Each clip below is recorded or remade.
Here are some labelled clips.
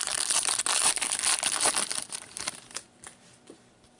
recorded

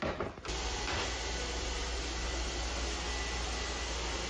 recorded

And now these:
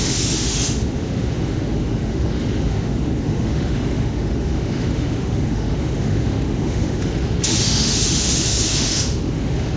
remade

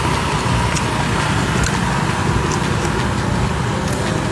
recorded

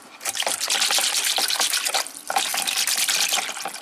recorded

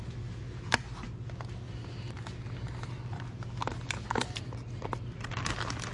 recorded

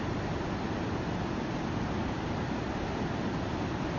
recorded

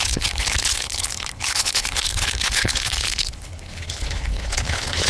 remade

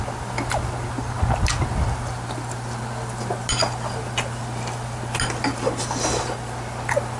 recorded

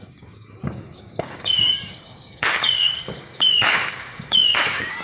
remade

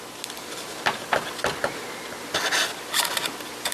recorded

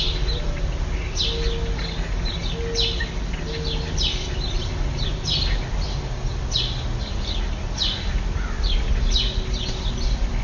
recorded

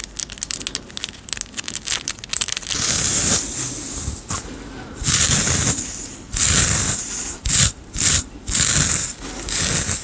recorded